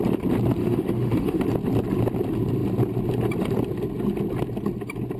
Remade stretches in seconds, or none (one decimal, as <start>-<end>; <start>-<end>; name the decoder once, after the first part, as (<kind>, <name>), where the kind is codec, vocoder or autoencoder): 0.6-1.4 (autoencoder, DAC-VAE)